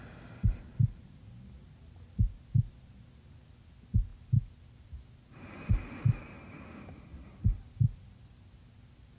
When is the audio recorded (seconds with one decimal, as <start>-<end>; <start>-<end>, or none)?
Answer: 0.0-9.2